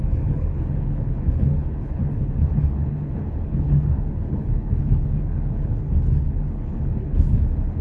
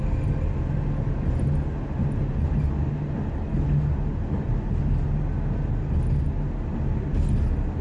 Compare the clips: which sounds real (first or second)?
second